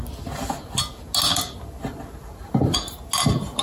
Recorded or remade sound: recorded